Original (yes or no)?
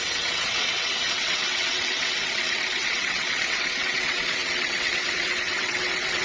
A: no